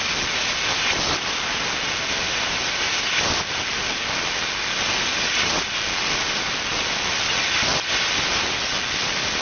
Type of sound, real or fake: real